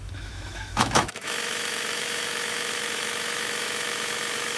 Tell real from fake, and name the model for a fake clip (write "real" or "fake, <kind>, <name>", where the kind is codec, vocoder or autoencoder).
fake, autoencoder, DAC-VAE